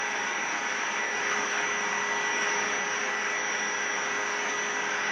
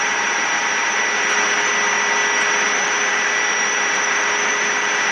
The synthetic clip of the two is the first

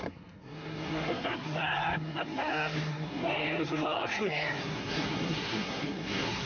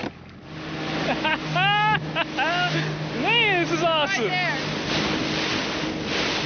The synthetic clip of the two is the first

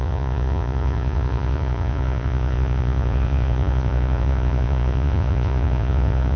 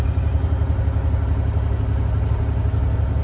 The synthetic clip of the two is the first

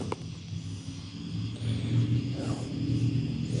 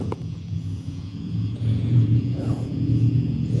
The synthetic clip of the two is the second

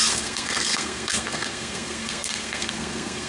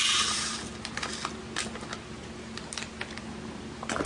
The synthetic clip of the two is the first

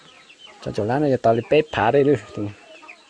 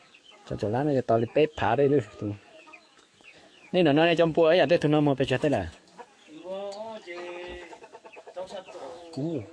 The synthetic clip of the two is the second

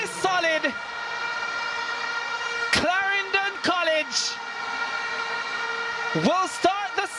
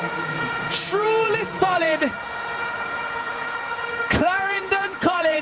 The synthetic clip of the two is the second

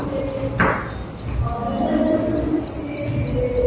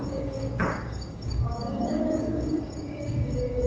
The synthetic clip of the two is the second